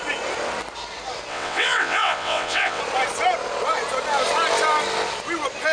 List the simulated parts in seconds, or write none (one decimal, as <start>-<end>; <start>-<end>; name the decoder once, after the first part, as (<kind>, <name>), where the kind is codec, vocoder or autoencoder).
1.3-2.8 (vocoder, WaveNeXt)